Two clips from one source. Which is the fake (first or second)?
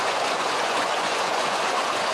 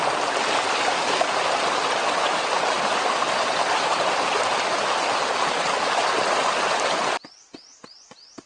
first